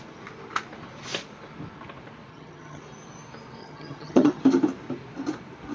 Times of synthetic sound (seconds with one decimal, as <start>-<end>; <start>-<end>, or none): 2.3-2.8; 3.6-4.4